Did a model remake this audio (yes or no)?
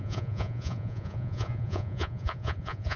yes